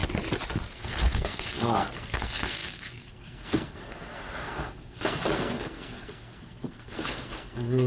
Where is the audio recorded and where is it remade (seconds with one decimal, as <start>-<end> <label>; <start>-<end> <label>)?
0.0-0.7 recorded; 0.7-7.9 remade